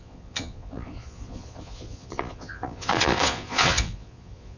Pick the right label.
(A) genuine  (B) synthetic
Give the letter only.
B